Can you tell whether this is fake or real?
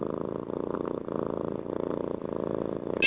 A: real